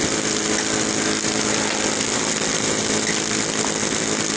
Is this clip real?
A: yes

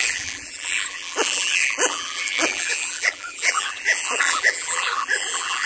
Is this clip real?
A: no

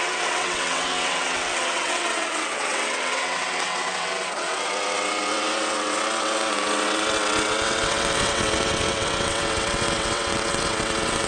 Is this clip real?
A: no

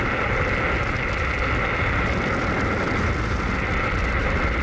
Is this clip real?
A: yes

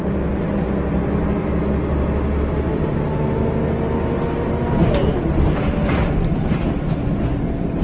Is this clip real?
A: yes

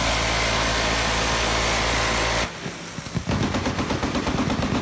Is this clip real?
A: yes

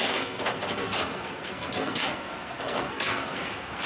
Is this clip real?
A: no